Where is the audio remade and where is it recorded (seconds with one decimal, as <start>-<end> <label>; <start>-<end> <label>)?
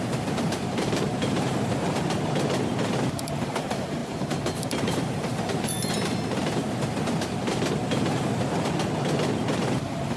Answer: 0.0-6.4 remade; 6.4-9.5 recorded; 9.5-10.2 remade